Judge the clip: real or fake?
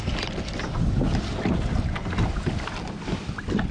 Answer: real